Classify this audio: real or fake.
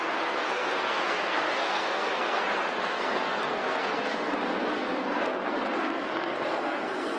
fake